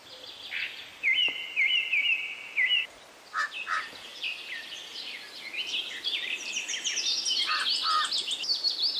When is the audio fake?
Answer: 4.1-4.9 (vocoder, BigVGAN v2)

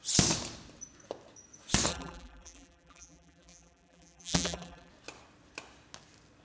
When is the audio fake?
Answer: 1.9-4.9 (vocoder, BigVGAN v2)

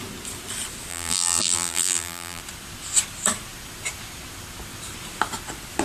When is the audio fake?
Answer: 0.9-2.4 (vocoder, BigVGAN v2)

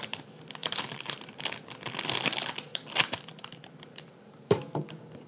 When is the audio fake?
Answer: 0.6-1.4 (vocoder, BigVGAN v2); 2.7-4.6

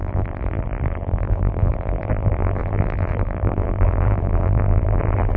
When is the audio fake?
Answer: 0.0-5.4 (vocoder, BigVGAN v2)

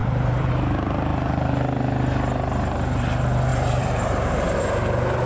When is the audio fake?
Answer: 0.0-0.5 (vocoder, BigVGAN v2); 3.5-4.6

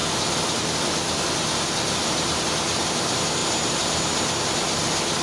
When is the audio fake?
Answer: 2.0-2.5 (vocoder, BigVGAN v2); 3.4-4.1

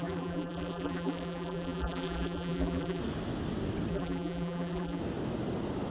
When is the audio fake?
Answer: 0.0-3.0 (vocoder, BigVGAN v2); 3.9-5.0